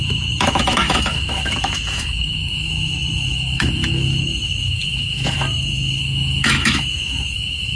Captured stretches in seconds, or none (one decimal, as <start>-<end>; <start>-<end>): none